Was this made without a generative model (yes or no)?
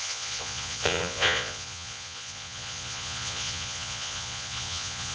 no